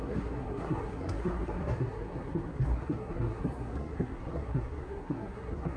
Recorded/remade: remade